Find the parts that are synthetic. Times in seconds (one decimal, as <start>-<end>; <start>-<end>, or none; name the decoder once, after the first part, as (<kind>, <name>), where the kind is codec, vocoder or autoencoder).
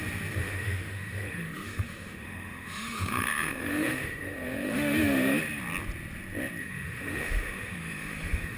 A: 0.4-5.4 (autoencoder, DAC-VAE); 6.6-8.6